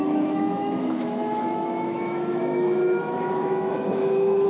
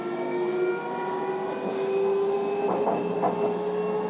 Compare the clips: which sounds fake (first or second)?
first